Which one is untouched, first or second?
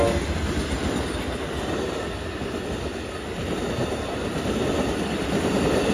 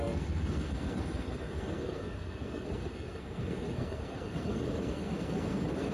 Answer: first